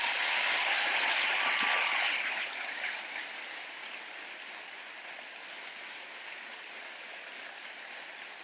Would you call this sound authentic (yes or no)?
yes